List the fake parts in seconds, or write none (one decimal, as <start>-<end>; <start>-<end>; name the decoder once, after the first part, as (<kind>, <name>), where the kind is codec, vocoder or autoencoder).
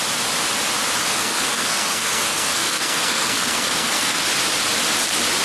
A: 1.0-4.2 (codec, SNAC)